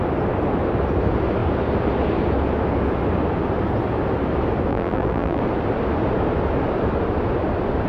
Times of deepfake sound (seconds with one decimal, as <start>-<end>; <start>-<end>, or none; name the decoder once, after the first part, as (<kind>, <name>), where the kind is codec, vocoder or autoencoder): 4.7-5.4 (vocoder, BigVGAN v2)